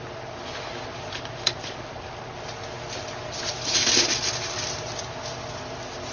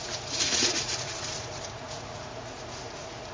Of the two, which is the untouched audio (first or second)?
first